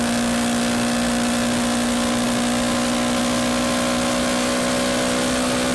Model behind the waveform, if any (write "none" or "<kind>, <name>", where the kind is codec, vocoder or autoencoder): none